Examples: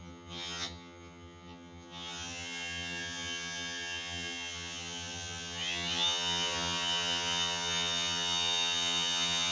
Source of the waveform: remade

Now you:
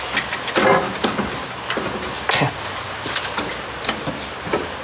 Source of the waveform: recorded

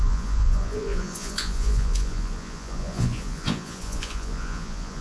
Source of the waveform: remade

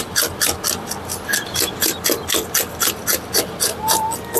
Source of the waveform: recorded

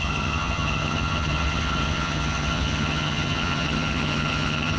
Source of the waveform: remade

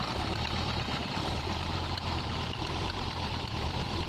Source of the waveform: remade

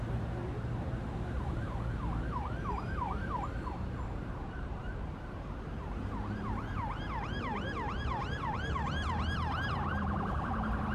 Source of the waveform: remade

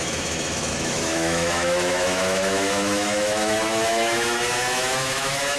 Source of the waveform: remade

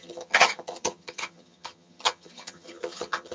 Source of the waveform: remade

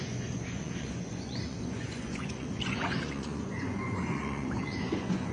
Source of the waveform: remade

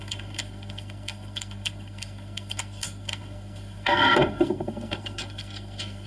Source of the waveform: remade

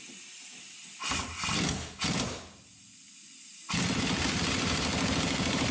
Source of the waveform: recorded